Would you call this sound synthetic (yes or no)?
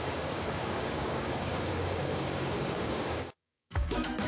yes